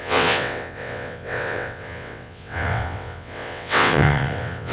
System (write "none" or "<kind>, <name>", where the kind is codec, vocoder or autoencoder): vocoder, WaveNeXt